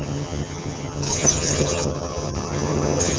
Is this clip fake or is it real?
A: fake